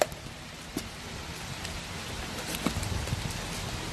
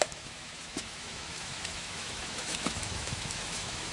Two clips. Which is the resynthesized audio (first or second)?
second